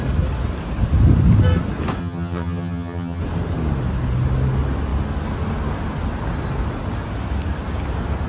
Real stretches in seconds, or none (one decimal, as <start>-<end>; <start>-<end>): 0.0-2.0; 3.2-8.3